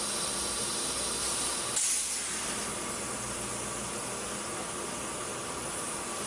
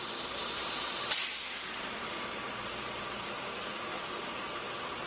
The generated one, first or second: second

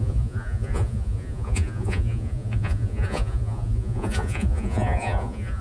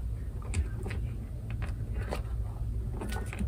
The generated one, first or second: first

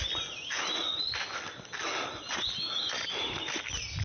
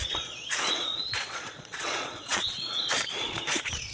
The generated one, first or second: second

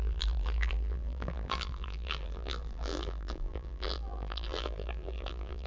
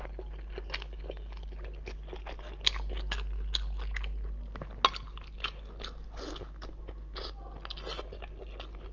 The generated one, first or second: first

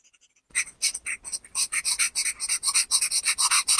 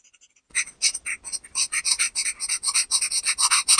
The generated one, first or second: second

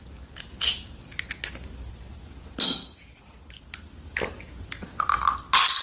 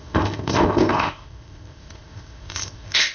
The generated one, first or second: second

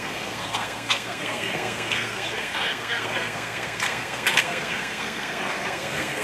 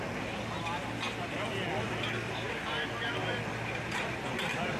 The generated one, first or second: first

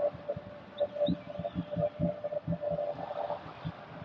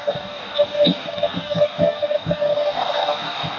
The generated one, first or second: second